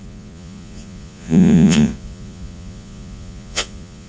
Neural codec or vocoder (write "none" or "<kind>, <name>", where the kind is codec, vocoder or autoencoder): vocoder, Vocos